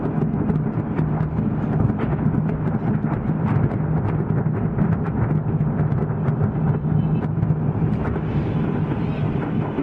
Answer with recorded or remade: recorded